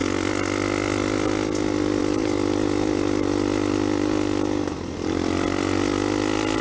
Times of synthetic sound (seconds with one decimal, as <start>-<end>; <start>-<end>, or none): none